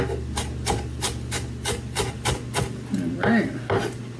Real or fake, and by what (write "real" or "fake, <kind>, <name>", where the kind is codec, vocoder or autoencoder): real